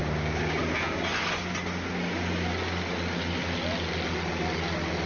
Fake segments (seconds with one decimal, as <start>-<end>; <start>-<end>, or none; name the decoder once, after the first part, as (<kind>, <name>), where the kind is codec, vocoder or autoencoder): 0.0-0.6 (codec, DAC)